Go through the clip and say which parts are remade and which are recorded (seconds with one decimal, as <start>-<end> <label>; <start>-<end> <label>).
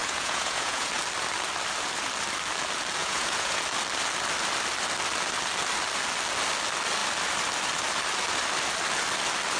0.0-0.9 remade; 0.9-3.0 recorded; 3.0-3.6 remade; 3.6-9.6 recorded